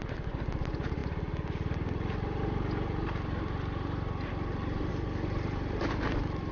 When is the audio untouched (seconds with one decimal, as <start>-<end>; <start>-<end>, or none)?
0.0-6.5